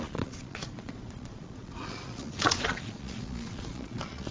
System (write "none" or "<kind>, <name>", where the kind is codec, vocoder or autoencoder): vocoder, Vocos